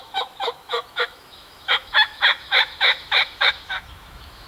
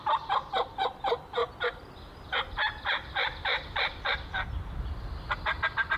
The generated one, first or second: first